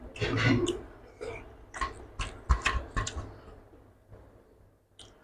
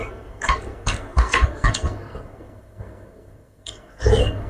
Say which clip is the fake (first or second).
second